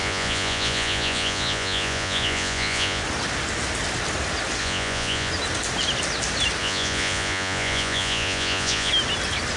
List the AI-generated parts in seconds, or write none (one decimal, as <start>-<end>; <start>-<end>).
0.0-3.0; 4.6-5.3; 6.6-8.9